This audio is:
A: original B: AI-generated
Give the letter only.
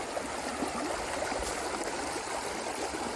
A